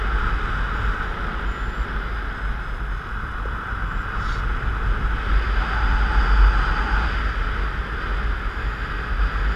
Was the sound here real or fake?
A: real